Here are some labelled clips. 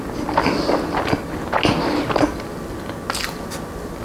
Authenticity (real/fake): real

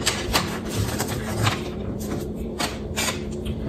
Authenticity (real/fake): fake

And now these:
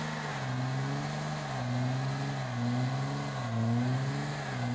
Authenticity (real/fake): real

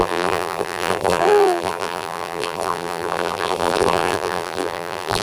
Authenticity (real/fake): fake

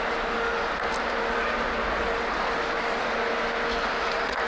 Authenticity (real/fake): real